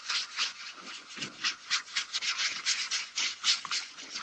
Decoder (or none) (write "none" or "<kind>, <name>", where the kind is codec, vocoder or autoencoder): vocoder, Vocos